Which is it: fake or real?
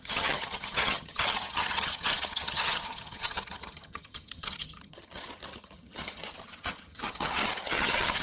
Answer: fake